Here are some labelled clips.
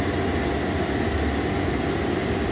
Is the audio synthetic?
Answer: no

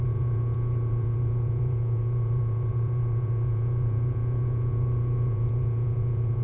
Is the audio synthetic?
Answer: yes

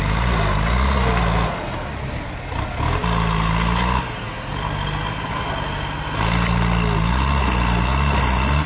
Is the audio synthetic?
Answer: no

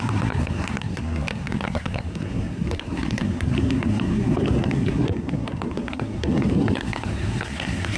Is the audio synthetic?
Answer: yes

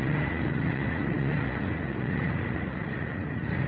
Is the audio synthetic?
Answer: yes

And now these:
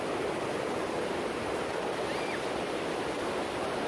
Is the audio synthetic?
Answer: no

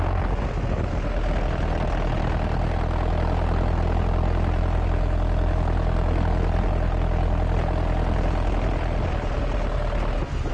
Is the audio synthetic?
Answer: no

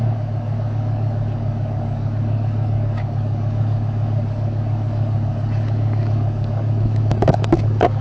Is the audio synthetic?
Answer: yes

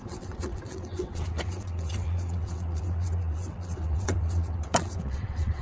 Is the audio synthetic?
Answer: yes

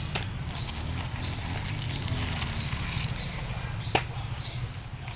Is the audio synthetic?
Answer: no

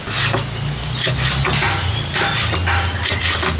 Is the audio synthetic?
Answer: no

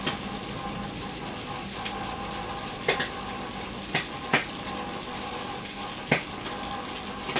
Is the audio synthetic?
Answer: no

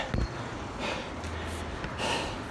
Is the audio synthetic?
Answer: no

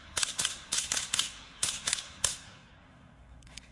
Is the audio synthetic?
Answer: yes